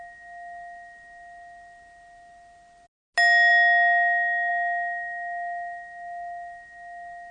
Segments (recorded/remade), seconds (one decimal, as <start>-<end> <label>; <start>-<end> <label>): 0.0-7.3 recorded